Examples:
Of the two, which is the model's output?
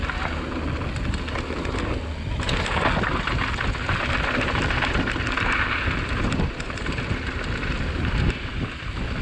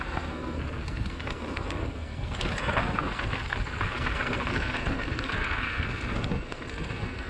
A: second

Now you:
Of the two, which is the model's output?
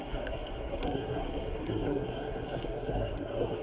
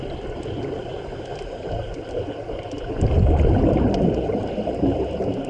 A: first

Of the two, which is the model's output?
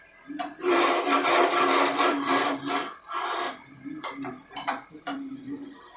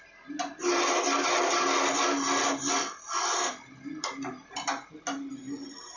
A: first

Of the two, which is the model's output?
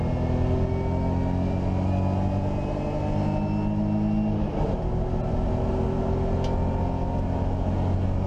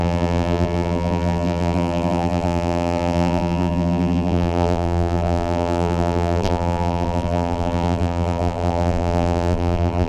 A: second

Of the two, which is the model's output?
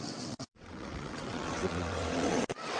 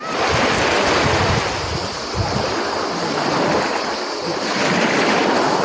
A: first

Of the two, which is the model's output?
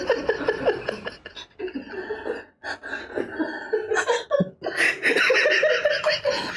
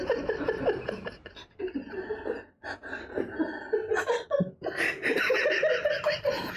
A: second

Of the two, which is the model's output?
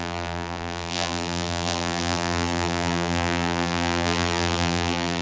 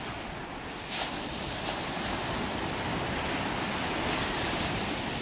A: first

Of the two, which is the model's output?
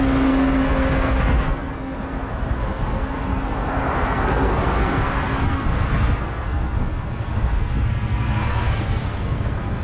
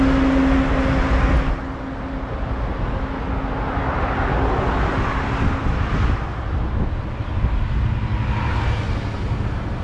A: first